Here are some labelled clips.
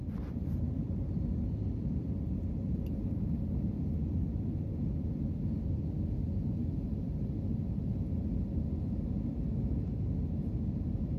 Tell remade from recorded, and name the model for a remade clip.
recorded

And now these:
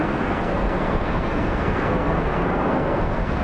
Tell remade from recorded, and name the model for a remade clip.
remade, codec, SNAC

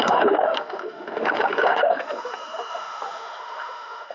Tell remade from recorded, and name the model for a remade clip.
remade, autoencoder, DAC-VAE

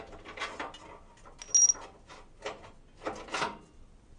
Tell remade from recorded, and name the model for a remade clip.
recorded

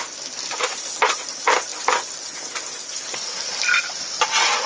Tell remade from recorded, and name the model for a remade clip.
recorded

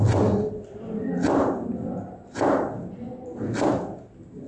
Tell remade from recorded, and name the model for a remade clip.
recorded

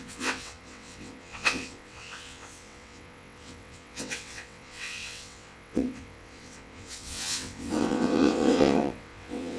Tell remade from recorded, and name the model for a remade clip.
remade, vocoder, WaveNeXt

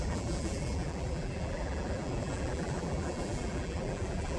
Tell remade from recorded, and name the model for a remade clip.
remade, vocoder, BigVGAN v2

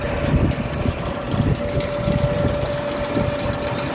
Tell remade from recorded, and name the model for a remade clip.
recorded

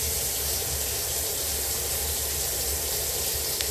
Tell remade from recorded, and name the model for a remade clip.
recorded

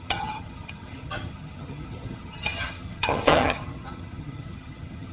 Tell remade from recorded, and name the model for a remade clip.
remade, vocoder, HiFi-GAN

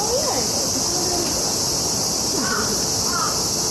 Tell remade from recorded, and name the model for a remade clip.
recorded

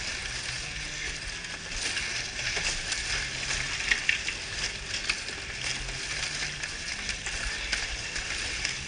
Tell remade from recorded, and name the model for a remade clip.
recorded